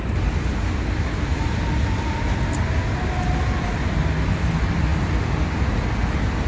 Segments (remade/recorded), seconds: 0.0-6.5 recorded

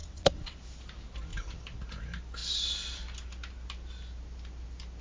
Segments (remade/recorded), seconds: 0.0-0.6 remade; 0.6-5.0 recorded

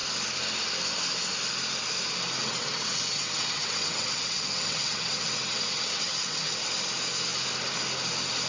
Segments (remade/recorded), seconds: 0.0-2.4 recorded; 2.4-6.7 remade; 6.7-8.5 recorded